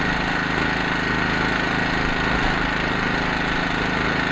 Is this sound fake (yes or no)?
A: no